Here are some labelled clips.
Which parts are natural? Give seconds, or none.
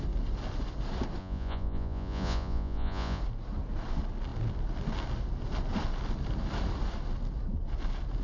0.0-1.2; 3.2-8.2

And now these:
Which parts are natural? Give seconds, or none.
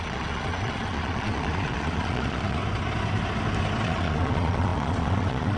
2.6-3.8